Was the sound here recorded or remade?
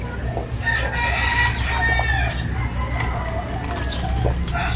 recorded